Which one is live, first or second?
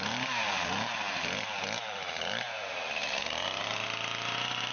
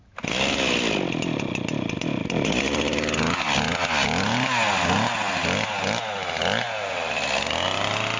second